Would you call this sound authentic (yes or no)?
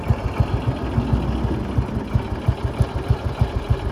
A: yes